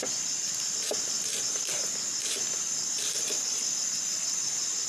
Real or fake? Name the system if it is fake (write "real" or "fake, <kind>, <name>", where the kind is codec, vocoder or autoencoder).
real